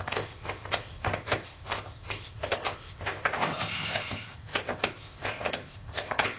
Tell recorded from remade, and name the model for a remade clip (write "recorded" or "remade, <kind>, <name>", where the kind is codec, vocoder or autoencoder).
remade, codec, ZipCodec